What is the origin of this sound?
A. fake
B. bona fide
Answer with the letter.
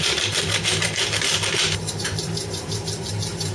A